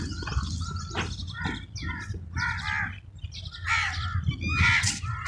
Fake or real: real